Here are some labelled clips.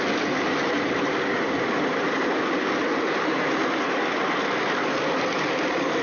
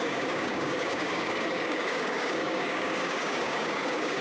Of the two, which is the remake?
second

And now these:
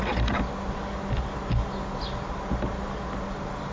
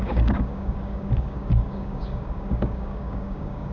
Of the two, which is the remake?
second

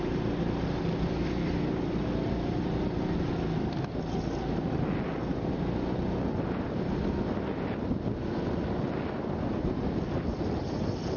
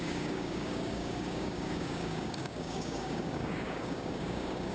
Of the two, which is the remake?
second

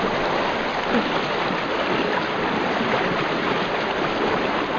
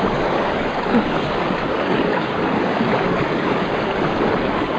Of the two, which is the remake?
second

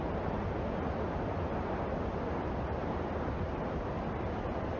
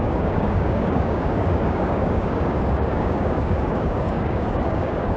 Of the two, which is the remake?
second